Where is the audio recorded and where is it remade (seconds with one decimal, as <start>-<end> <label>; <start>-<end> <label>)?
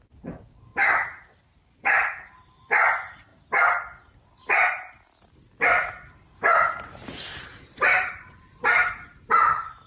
0.0-7.3 recorded; 7.3-9.9 remade